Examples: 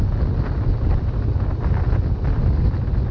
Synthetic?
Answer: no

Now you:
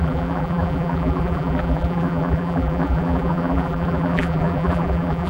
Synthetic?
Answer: yes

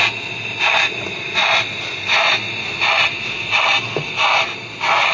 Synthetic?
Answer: no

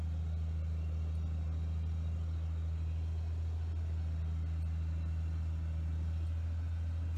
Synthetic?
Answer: no